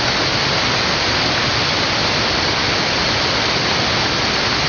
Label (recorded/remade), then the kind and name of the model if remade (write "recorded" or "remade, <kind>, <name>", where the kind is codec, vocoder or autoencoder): recorded